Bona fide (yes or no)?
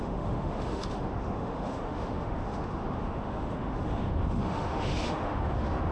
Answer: no